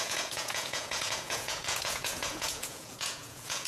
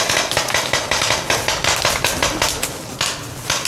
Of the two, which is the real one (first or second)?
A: second